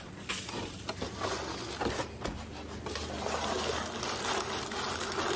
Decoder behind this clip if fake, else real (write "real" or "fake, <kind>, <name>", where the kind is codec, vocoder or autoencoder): real